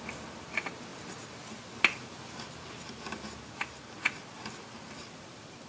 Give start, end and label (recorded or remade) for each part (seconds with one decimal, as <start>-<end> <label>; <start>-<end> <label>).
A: 0.0-5.7 recorded